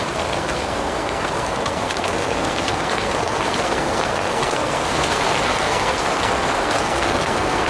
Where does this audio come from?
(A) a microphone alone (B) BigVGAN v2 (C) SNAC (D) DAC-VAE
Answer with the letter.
C